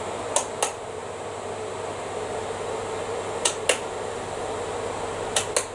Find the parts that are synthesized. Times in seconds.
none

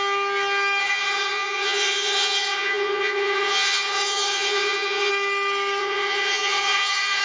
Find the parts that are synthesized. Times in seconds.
0.8-5.1; 5.8-7.2

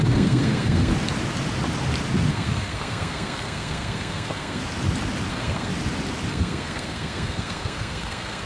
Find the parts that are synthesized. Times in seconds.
0.0-0.9; 2.3-4.6; 5.3-5.7; 6.3-8.5

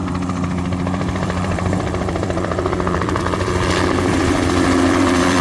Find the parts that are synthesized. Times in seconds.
0.0-5.4

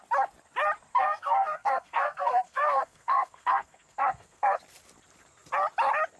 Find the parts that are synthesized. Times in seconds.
0.9-4.6

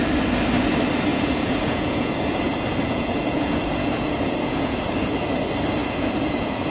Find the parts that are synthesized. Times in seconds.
1.1-4.8; 5.8-6.7

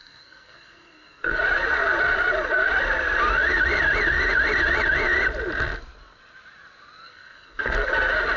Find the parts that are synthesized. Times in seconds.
0.0-1.4; 7.1-7.9